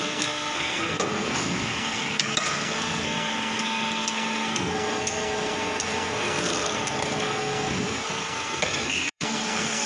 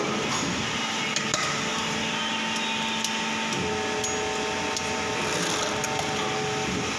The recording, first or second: second